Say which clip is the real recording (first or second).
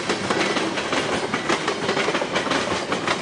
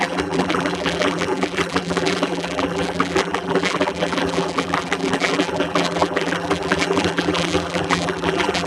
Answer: first